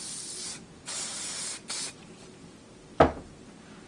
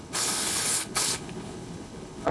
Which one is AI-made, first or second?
second